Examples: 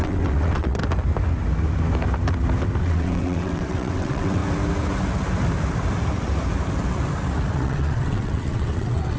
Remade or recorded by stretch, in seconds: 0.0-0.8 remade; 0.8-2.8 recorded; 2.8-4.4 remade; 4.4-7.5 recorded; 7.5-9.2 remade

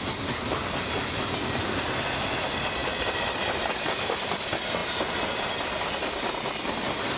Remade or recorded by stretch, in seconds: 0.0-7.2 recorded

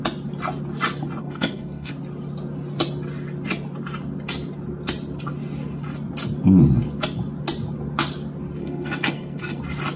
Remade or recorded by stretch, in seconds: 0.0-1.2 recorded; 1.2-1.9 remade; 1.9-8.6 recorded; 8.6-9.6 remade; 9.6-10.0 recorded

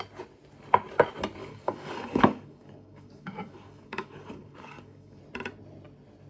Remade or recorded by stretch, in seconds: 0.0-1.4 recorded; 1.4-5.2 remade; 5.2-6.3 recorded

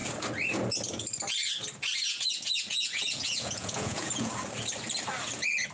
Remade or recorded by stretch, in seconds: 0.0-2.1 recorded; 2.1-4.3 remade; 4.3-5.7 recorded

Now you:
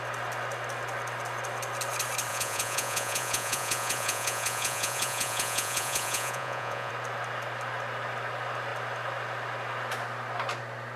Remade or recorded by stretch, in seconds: 0.0-2.3 recorded; 2.3-6.9 remade; 6.9-11.0 recorded

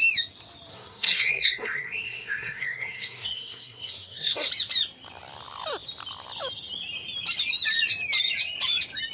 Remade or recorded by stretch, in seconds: 0.0-0.7 recorded; 0.7-4.5 remade; 4.5-9.1 recorded

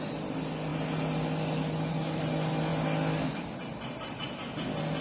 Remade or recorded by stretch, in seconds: 0.0-5.0 recorded